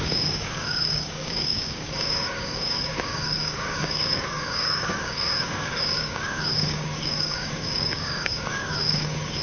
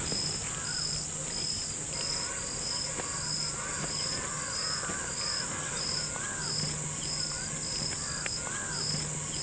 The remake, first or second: first